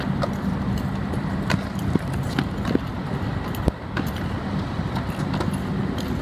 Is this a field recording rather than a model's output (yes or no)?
yes